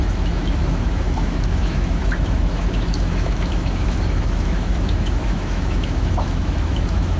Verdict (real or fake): fake